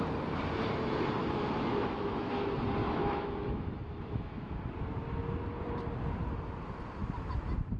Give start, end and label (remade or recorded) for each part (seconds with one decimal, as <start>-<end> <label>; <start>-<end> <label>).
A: 0.0-1.2 recorded; 1.2-2.3 remade; 2.3-2.8 recorded; 2.8-4.5 remade; 4.5-7.8 recorded